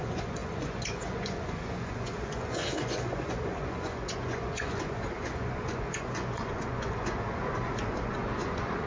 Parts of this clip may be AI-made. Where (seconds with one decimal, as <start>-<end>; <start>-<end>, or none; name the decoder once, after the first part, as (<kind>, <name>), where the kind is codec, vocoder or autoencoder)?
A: 0.0-8.9 (vocoder, Vocos)